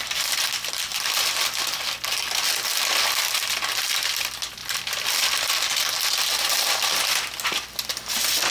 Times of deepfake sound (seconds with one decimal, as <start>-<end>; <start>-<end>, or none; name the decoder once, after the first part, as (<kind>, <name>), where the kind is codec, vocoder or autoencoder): 0.9-3.4 (vocoder, BigVGAN v2); 4.6-5.1